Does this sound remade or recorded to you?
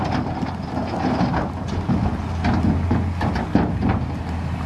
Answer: recorded